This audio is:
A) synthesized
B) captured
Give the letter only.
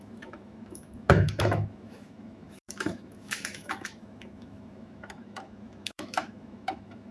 A